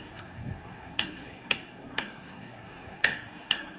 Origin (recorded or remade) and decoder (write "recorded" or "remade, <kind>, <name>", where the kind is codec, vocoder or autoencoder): remade, codec, SNAC